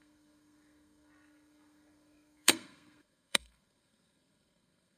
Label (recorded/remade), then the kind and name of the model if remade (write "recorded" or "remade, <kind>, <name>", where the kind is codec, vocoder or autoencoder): remade, codec, SNAC